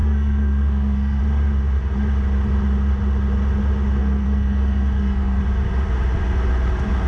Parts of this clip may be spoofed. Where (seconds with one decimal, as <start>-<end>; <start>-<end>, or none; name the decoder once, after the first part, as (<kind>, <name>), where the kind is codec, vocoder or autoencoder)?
0.0-1.2 (codec, SNAC); 4.0-5.4